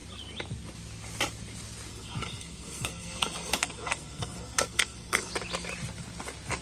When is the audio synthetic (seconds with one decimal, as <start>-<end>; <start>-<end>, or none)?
1.9-5.3